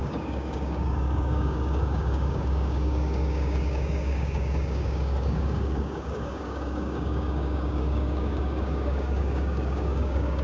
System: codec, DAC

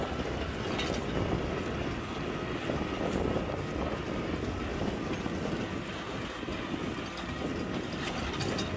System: none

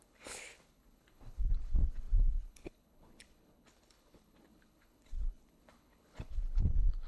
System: codec, HILCodec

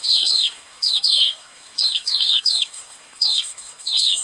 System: codec, SNAC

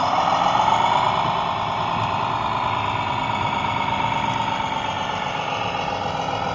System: none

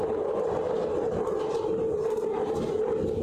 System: none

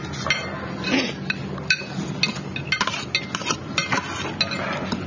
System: none